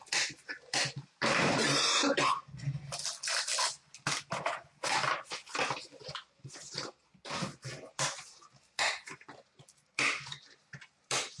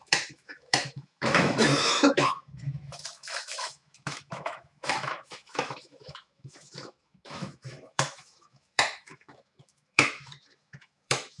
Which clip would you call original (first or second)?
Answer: first